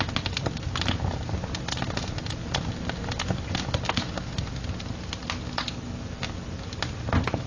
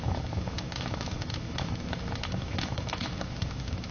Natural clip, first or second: first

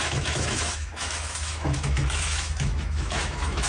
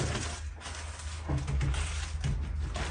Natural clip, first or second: second